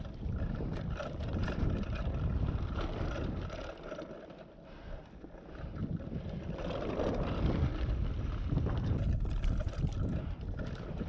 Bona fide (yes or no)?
yes